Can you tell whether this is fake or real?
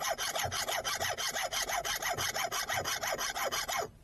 real